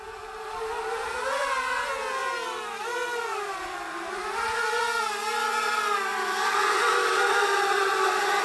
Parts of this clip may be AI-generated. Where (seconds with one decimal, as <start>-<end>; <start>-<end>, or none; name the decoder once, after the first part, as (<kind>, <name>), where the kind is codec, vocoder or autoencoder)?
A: 2.2-4.8 (vocoder, BigVGAN v2); 6.1-6.8